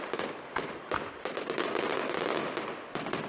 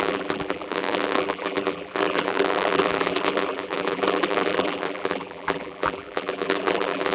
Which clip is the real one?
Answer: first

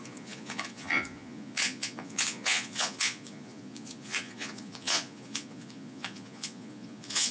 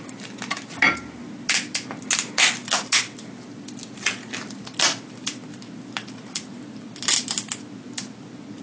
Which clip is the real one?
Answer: second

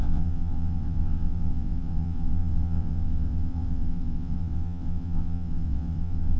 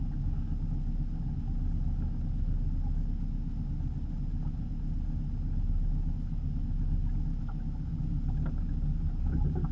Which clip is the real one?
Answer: second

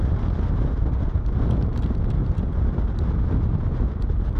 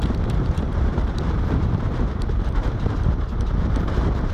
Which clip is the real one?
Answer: first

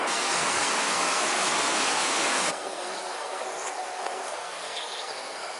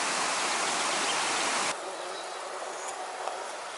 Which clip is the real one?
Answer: second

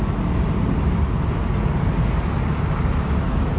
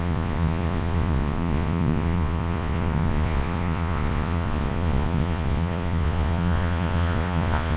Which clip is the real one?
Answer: first